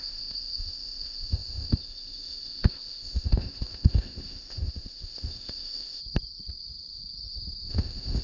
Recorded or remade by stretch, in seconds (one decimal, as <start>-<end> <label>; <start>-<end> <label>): 0.0-6.0 remade; 6.0-7.7 recorded; 7.7-8.2 remade